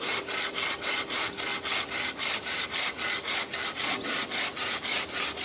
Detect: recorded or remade recorded